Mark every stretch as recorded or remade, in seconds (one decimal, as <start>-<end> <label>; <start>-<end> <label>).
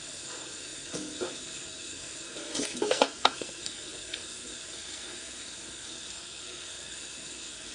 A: 0.0-7.7 remade